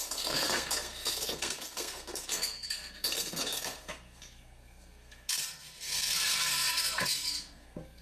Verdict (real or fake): fake